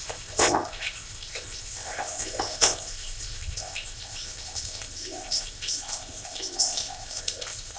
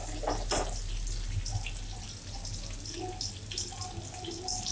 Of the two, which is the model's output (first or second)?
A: first